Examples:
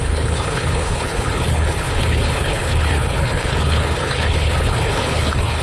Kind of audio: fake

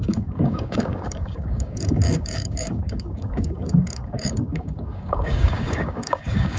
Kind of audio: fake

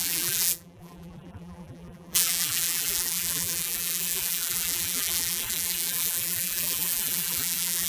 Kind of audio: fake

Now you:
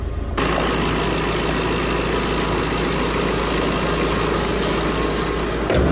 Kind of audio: real